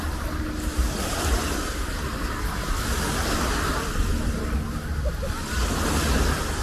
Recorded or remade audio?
recorded